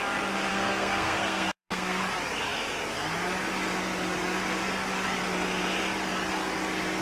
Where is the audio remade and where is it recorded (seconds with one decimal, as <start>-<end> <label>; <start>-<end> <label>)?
0.0-0.5 recorded; 0.5-2.0 remade; 2.0-7.0 recorded